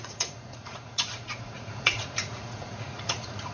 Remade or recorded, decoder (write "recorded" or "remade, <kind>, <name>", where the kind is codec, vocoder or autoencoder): remade, vocoder, Vocos